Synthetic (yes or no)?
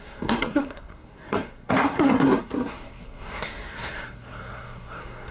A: yes